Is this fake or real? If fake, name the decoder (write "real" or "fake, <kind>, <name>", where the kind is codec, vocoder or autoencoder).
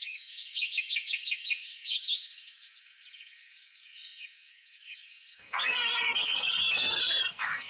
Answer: fake, codec, SNAC